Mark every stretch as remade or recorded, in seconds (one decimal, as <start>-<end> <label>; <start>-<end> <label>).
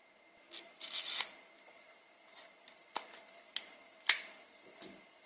0.0-5.3 recorded